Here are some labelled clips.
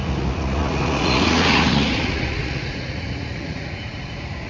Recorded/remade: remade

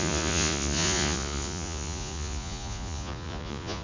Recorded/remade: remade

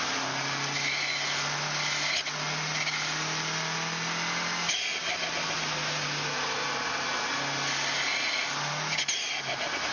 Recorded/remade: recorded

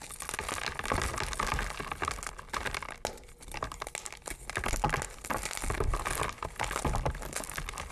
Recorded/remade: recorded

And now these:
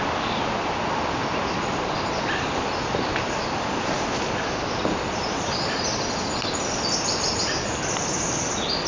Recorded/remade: recorded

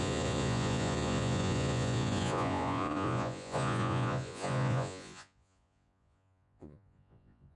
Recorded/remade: remade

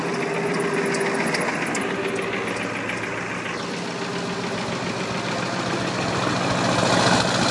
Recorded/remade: recorded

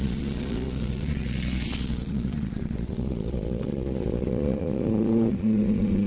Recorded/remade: remade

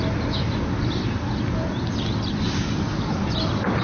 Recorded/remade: recorded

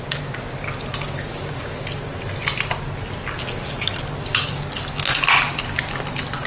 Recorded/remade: recorded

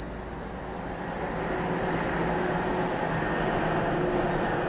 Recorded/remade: recorded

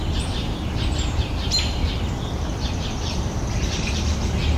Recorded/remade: recorded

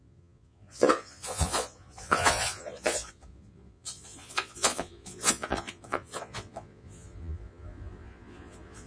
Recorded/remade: remade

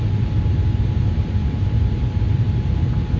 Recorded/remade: recorded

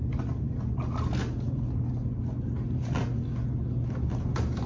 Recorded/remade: recorded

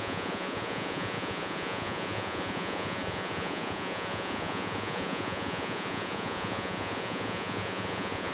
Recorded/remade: remade